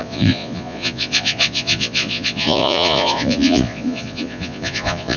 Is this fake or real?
fake